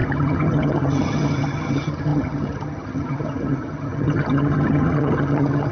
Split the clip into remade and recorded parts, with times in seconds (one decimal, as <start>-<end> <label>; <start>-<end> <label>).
0.0-5.7 remade